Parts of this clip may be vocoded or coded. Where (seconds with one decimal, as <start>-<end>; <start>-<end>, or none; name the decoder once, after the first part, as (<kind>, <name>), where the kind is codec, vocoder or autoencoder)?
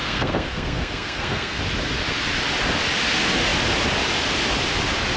0.0-1.6 (codec, SNAC)